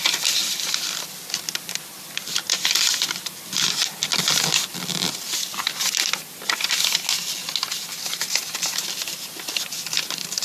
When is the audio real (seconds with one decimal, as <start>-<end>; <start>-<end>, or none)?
0.0-10.4